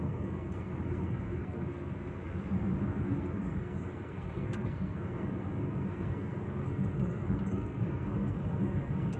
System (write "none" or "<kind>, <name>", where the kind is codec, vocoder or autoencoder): codec, SNAC